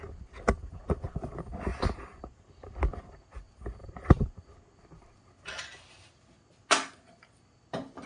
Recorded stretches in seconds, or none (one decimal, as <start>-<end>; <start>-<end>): 0.0-1.7; 2.5-3.8; 4.3-8.1